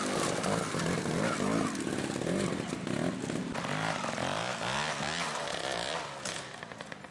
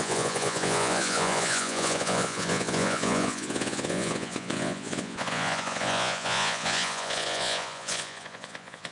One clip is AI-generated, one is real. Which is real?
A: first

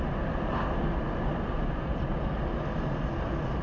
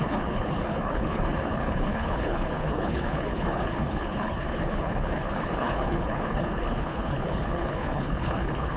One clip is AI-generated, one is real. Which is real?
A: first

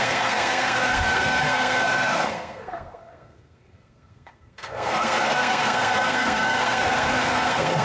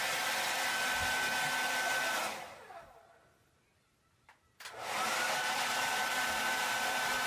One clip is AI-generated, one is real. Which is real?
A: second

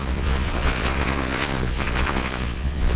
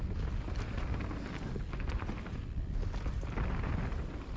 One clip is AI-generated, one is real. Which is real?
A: second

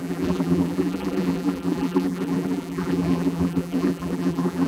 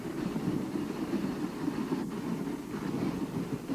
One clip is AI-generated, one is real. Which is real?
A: second